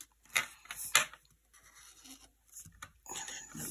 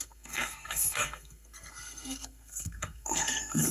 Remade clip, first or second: second